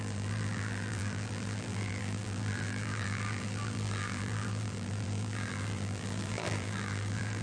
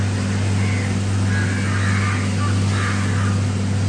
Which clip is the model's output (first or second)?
first